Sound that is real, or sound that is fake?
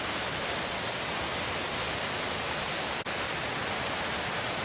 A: real